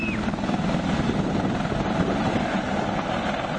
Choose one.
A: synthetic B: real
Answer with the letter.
B